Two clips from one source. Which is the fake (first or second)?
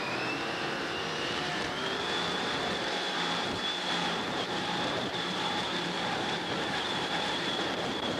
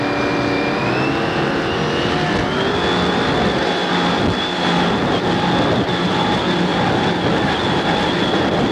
first